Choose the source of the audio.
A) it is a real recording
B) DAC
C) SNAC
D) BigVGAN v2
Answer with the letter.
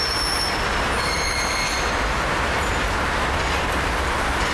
A